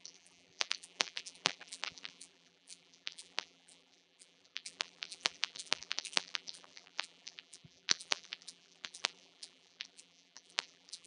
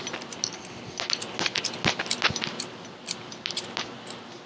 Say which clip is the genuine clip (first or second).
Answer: second